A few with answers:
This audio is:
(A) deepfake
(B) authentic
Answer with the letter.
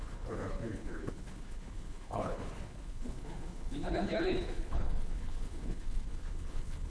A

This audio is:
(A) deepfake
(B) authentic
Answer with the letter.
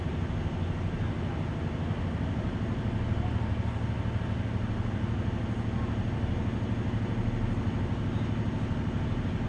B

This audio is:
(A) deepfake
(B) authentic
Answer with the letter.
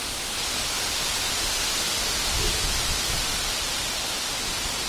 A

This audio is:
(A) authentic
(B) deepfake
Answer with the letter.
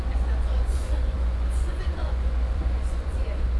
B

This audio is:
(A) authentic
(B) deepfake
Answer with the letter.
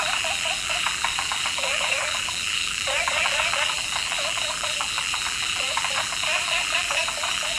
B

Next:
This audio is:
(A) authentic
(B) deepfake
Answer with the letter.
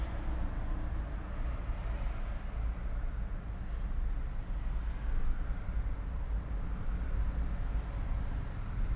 A